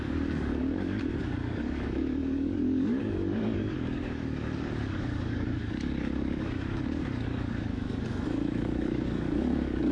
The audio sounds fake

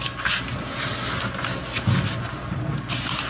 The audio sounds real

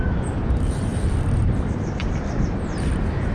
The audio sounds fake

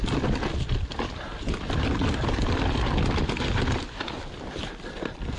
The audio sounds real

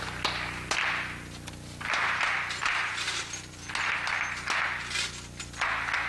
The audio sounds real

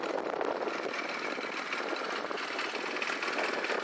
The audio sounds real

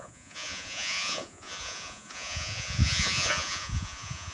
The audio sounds fake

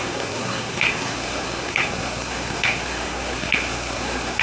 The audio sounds fake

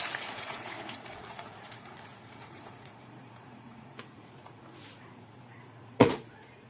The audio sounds fake